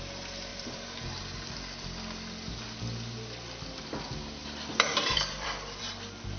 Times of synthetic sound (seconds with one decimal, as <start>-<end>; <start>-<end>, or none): 0.5-1.0; 4.4-6.4